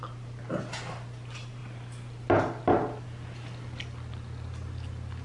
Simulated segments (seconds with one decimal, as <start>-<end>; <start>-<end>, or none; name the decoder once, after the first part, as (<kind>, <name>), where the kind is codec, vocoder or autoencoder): none